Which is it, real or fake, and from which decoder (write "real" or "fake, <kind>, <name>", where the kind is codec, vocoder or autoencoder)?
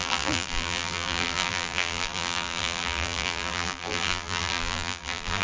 fake, vocoder, BigVGAN v2